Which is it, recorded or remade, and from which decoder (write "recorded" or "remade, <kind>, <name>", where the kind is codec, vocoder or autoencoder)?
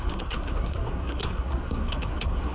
remade, codec, SNAC